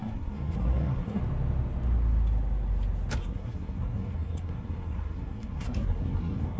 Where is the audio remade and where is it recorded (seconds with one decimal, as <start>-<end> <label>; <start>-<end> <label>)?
0.0-1.2 remade; 1.2-3.2 recorded; 3.2-6.6 remade